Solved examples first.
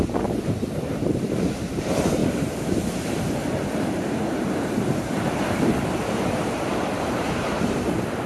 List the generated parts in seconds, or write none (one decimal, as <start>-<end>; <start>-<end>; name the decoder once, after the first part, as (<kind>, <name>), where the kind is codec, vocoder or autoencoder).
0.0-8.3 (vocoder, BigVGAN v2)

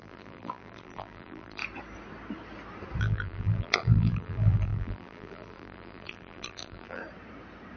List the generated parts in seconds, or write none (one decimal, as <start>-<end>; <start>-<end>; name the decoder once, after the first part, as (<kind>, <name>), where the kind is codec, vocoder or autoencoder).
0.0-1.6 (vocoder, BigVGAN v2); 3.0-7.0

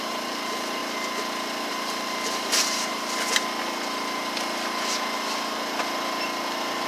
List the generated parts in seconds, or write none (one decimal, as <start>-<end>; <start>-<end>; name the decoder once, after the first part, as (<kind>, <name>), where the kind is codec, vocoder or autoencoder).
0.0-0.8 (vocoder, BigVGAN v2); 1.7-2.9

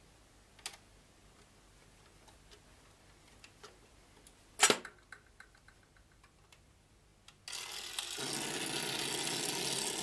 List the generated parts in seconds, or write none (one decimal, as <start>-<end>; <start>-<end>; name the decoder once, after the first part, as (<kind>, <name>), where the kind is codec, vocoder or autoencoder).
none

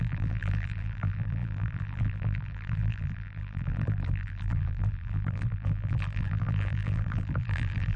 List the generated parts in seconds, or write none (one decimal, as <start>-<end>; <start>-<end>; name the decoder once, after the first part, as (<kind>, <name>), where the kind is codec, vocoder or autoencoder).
0.0-8.0 (vocoder, BigVGAN v2)

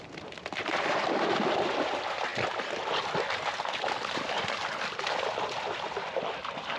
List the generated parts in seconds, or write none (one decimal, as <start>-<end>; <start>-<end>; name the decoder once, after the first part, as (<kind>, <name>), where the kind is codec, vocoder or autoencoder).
none